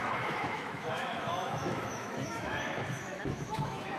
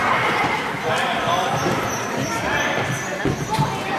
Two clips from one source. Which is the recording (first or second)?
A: second